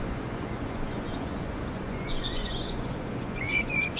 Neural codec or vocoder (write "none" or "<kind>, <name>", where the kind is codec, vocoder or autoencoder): vocoder, Vocos